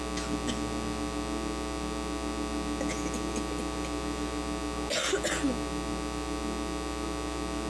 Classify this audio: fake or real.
real